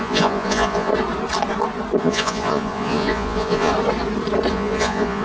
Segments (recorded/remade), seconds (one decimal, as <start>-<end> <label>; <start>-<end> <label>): 0.0-0.9 remade; 0.9-2.0 recorded; 2.0-3.7 remade; 3.7-4.5 recorded; 4.5-5.2 remade